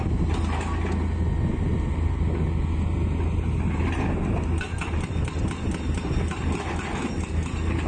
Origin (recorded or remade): recorded